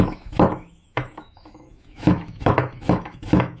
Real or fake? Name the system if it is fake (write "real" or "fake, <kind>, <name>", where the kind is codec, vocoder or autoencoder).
fake, autoencoder, DAC-VAE